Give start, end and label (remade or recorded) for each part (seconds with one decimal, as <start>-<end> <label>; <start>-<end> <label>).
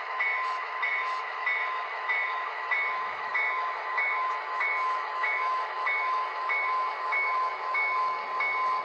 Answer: 0.0-8.2 remade; 8.2-8.8 recorded